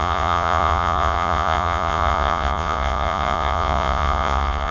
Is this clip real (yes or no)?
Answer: no